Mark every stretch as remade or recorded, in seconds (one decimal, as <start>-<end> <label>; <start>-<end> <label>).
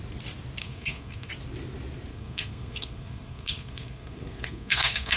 0.0-0.6 recorded; 0.6-1.3 remade; 1.3-2.1 recorded; 2.1-5.2 remade